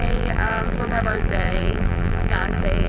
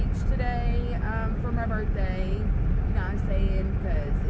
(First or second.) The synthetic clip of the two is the first